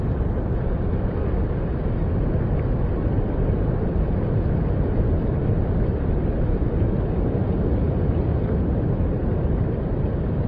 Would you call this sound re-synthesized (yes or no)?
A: no